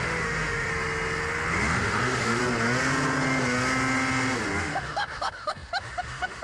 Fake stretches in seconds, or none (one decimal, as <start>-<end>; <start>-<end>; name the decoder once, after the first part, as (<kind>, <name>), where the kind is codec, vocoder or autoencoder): 0.0-0.7 (autoencoder, DAC-VAE); 1.5-2.4; 4.6-6.4